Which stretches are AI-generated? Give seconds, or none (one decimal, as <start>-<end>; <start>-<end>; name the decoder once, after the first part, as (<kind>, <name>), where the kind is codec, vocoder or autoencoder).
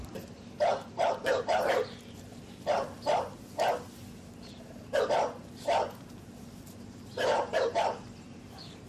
0.0-2.3 (vocoder, BigVGAN v2); 7.0-8.9